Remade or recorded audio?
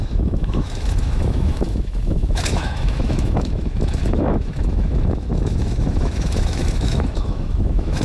remade